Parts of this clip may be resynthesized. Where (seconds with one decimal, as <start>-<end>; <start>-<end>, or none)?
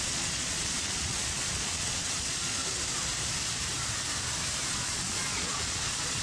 0.0-2.6; 4.7-6.2